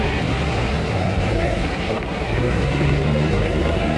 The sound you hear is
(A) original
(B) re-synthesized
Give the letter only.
B